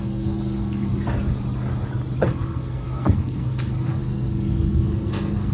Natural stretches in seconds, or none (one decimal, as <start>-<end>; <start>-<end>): 0.9-2.2